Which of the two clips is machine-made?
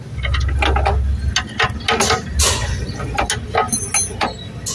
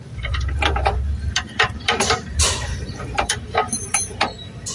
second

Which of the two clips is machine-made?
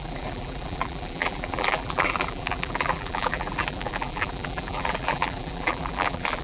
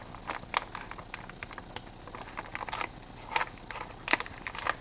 first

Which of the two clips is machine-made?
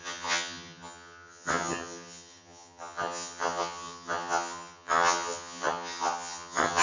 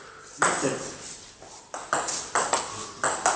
first